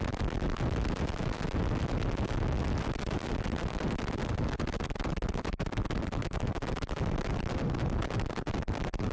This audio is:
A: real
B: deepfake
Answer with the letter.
A